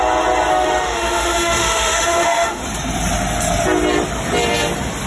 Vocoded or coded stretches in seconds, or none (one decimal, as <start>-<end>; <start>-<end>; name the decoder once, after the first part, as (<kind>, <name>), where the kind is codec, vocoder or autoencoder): 0.5-2.6 (autoencoder, DAC-VAE)